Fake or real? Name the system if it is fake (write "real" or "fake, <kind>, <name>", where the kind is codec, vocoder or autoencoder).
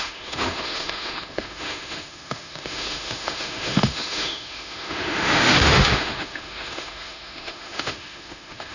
fake, autoencoder, DAC-VAE